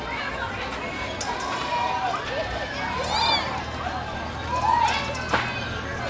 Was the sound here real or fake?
real